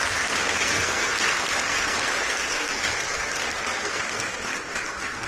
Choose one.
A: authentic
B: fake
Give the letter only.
B